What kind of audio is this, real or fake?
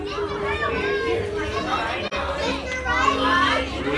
real